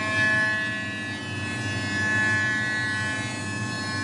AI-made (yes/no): no